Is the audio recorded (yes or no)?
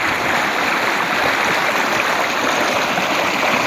no